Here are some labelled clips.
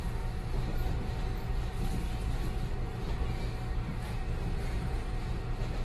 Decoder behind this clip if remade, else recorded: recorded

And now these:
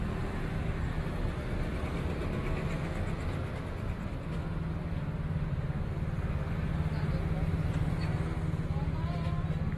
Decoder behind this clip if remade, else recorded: recorded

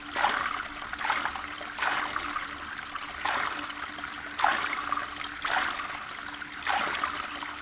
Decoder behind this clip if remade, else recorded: recorded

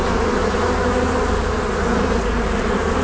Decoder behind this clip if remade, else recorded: remade, vocoder, BigVGAN v2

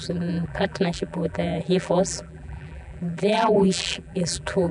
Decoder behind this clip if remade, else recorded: remade, vocoder, BigVGAN v2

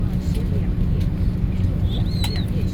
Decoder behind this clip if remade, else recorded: recorded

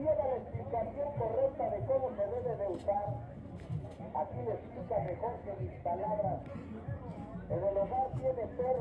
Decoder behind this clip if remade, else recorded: recorded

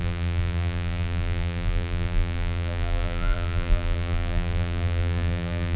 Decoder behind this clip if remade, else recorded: remade, vocoder, BigVGAN v2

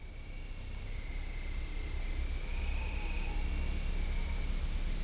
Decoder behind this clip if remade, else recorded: recorded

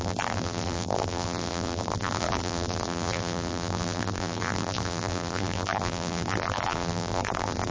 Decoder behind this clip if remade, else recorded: remade, vocoder, BigVGAN v2